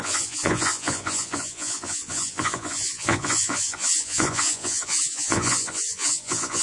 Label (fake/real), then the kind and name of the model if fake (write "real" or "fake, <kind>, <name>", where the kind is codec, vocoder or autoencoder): fake, vocoder, Vocos